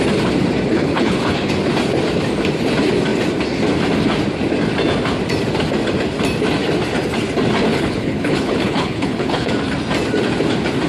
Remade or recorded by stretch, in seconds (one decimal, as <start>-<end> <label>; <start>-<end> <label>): 0.0-0.8 recorded; 0.8-1.5 remade; 1.5-7.7 recorded; 7.7-9.5 remade; 9.5-10.9 recorded